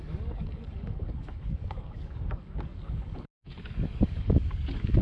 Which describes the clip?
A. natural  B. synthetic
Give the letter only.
B